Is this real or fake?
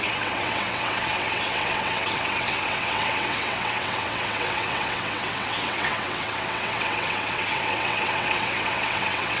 fake